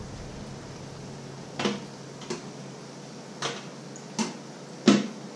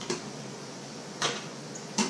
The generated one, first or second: second